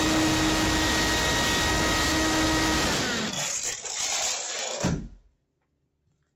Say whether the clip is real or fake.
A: real